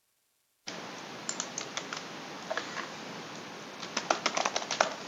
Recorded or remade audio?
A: recorded